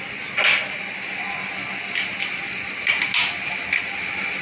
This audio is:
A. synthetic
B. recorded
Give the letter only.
B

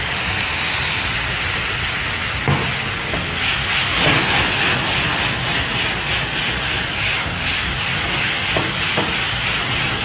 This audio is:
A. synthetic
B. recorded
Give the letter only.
B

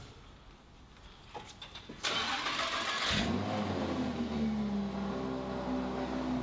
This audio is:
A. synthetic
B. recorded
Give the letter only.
B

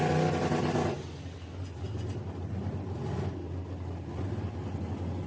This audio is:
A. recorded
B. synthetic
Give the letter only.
A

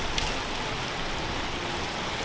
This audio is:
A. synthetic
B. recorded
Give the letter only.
B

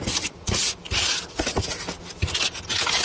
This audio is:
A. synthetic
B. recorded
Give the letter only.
B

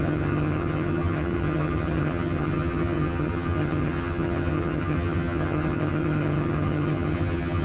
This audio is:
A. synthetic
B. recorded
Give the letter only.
A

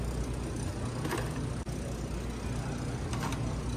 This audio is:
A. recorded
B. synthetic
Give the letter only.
A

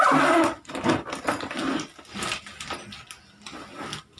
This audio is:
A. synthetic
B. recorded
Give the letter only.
B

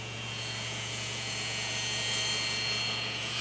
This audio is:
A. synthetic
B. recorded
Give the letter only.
A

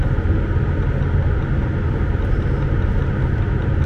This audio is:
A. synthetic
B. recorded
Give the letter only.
B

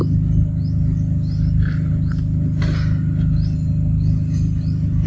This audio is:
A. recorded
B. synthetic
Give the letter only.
A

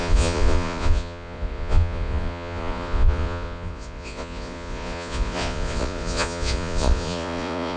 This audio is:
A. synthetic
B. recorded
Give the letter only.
A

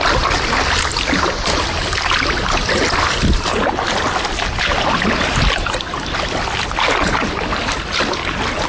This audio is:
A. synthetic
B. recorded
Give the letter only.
B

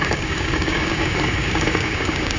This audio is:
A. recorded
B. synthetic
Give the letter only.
B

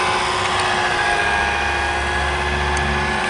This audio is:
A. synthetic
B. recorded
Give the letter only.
B